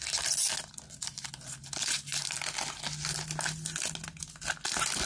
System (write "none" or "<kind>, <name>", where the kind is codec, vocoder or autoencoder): none